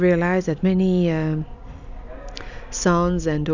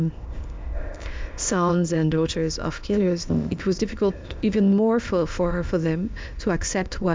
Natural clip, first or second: first